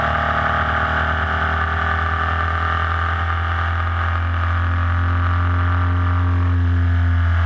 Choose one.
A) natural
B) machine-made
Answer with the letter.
A